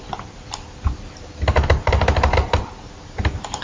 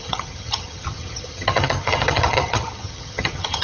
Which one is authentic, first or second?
first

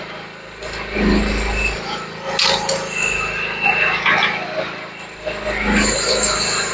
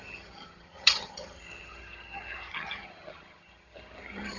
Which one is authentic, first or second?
first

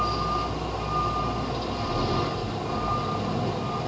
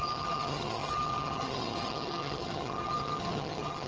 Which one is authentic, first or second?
first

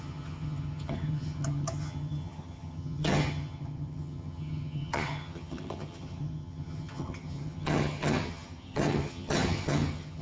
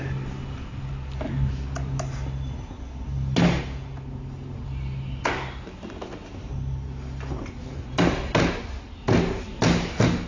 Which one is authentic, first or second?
second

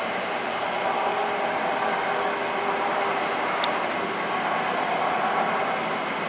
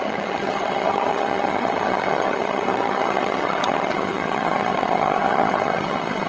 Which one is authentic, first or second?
first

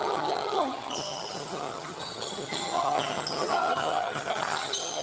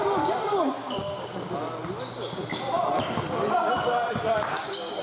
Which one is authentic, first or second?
second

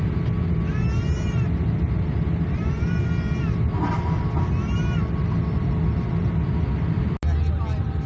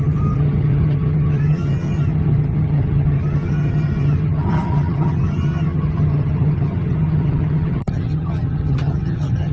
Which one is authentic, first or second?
first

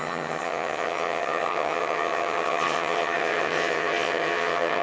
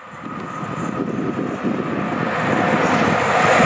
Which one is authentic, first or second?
second